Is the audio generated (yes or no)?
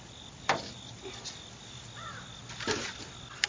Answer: no